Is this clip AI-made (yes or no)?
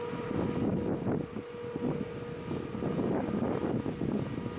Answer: no